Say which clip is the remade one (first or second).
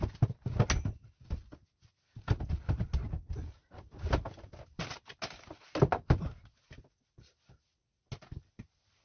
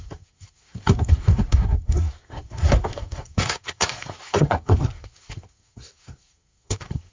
second